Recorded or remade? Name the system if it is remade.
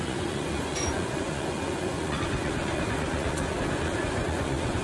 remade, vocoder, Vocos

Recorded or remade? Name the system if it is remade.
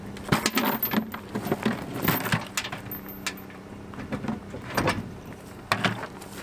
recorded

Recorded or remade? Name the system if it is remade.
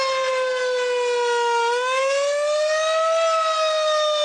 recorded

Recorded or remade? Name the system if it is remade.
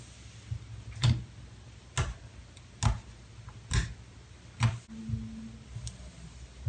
recorded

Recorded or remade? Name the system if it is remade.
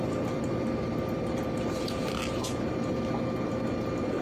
remade, vocoder, BigVGAN v2